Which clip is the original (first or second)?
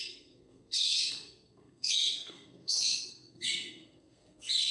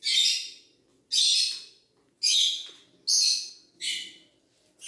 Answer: second